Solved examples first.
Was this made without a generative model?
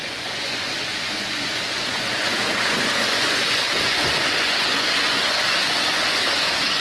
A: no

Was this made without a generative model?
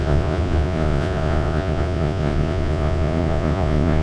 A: no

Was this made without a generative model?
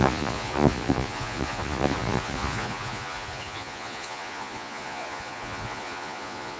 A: no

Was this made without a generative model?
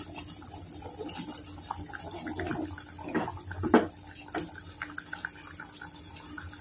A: yes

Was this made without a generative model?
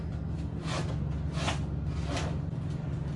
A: yes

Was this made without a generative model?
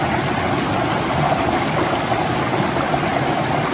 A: yes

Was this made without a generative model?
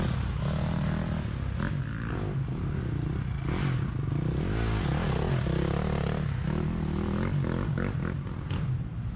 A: yes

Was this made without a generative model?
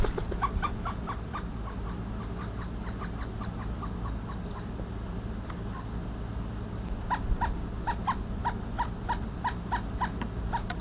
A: yes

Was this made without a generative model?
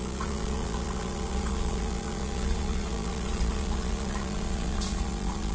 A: no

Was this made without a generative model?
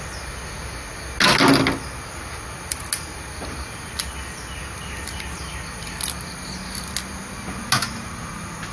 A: yes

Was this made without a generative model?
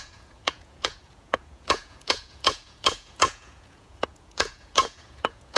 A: no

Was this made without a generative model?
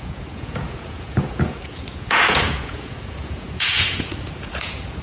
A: no